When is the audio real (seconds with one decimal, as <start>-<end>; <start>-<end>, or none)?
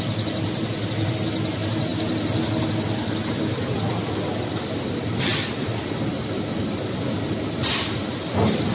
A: 0.0-8.7